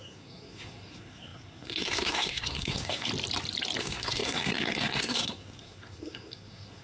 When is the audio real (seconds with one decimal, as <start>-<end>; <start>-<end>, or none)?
3.1-3.8